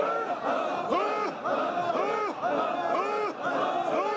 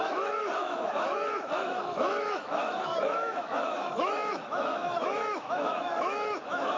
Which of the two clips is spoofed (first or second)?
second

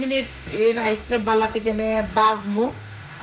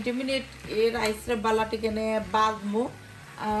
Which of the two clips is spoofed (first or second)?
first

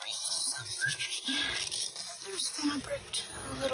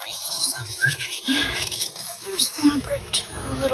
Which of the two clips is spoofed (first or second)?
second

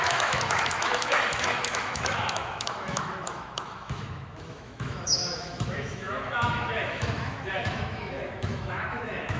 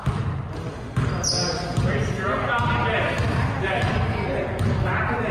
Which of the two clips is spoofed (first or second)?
first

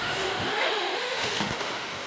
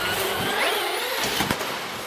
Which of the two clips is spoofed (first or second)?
first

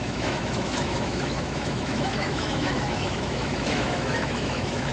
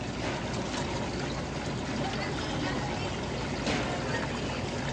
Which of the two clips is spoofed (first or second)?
first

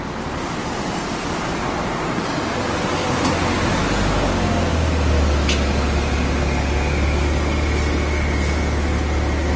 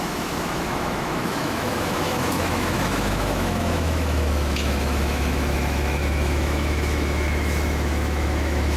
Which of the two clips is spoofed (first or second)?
second